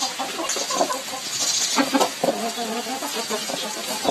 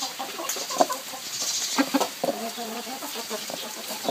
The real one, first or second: first